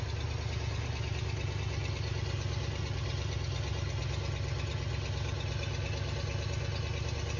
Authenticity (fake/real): real